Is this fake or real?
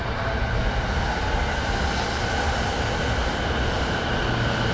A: real